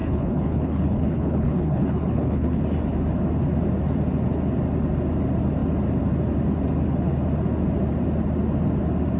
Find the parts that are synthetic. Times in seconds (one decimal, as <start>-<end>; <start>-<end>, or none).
0.0-2.6